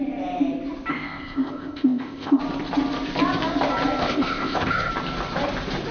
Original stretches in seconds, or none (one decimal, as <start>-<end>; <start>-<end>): 0.0-0.9; 2.4-4.0; 4.9-5.9